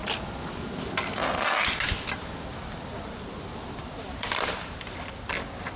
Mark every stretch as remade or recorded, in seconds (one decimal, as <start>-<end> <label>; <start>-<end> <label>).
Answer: 0.0-2.5 recorded; 2.5-5.8 remade

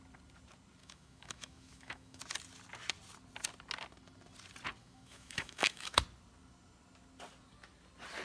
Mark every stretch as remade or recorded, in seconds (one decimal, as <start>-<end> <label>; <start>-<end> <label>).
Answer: 0.0-0.8 recorded; 0.8-2.2 remade; 2.2-4.8 recorded; 4.8-6.0 remade; 6.0-8.2 recorded

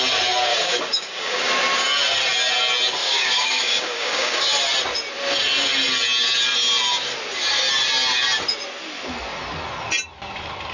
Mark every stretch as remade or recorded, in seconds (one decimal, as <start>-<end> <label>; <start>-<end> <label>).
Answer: 0.0-0.5 recorded; 0.5-1.5 remade; 1.5-3.0 recorded; 3.0-4.4 remade; 4.4-10.7 recorded